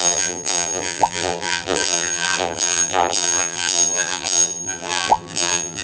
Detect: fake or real fake